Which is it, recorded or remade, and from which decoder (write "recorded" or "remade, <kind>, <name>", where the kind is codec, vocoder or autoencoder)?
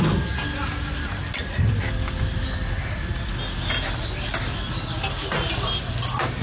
recorded